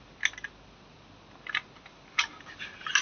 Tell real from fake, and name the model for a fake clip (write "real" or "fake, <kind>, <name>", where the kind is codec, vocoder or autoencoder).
real